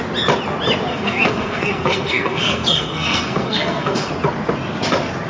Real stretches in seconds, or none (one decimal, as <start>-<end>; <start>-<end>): 0.0-0.9; 4.1-5.3